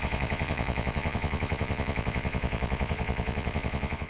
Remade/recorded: remade